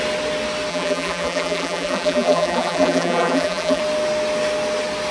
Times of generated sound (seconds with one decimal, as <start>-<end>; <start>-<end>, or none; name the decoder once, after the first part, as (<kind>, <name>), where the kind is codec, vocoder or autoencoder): 0.7-3.8 (vocoder, BigVGAN v2)